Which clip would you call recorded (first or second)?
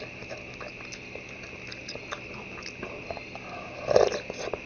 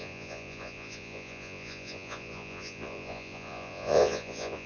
first